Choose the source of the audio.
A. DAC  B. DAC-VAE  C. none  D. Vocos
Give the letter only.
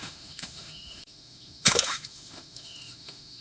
B